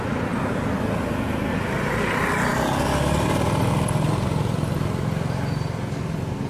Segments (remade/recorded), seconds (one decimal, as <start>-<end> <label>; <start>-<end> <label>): 0.0-6.5 recorded